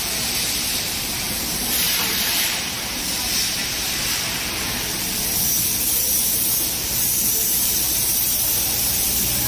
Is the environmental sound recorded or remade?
remade